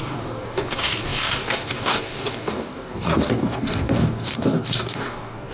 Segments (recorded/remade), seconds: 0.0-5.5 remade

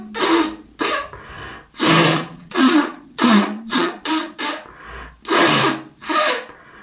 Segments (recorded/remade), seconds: 0.0-2.1 recorded; 2.1-4.4 remade; 4.4-6.8 recorded

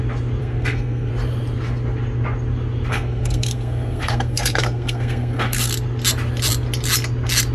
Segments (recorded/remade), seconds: 0.0-0.4 recorded; 0.4-1.1 remade; 1.1-2.9 recorded; 2.9-5.7 remade; 5.7-7.5 recorded

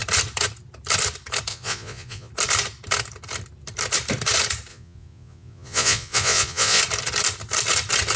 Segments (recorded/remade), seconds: 0.0-1.5 recorded; 1.5-2.3 remade; 2.3-4.7 recorded; 4.7-6.8 remade; 6.8-8.2 recorded

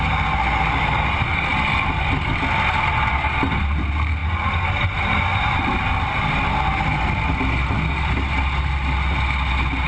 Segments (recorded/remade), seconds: 0.0-9.9 recorded

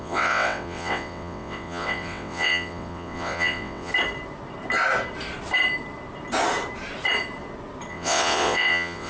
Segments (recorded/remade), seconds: 0.0-3.9 remade; 3.9-7.9 recorded; 7.9-9.1 remade

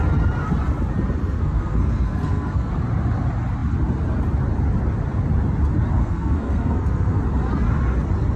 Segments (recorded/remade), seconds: 0.0-1.2 recorded; 1.2-2.7 remade; 2.7-6.0 recorded; 6.0-7.2 remade; 7.2-8.4 recorded